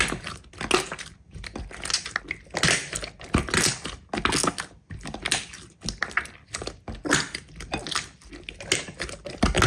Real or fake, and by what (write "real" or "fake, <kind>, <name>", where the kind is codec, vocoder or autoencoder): real